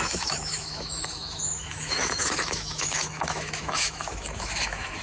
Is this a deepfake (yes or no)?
yes